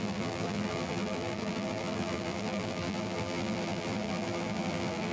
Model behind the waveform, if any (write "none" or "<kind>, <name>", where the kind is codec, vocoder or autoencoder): vocoder, BigVGAN v2